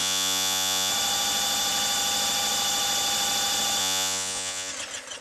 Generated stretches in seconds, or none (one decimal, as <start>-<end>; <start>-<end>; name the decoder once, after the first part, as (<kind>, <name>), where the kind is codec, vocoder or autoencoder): 0.0-0.9 (vocoder, Vocos); 3.8-4.7